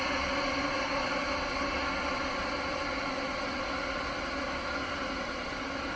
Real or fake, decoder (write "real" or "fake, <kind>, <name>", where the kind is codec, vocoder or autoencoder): real